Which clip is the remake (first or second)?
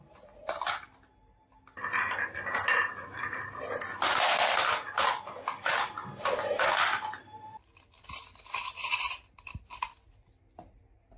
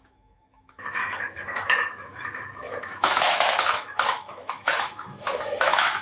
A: second